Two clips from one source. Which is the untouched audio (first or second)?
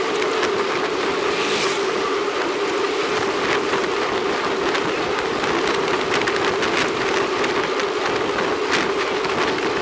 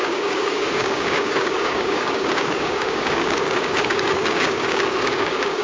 first